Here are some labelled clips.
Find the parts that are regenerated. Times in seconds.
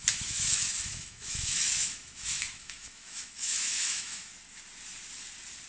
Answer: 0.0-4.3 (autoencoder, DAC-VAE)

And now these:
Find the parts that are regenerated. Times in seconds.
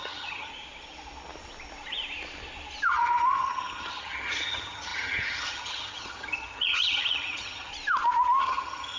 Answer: 0.0-0.5 (vocoder, HiFi-GAN); 2.9-7.7; 8.4-9.0